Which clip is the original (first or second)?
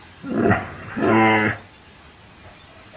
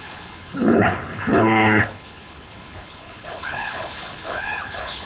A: first